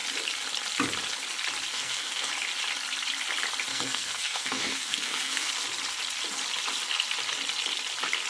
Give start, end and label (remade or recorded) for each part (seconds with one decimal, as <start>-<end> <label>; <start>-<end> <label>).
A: 0.0-1.7 recorded; 1.7-2.3 remade; 2.3-3.7 recorded; 3.7-5.5 remade; 5.5-8.3 recorded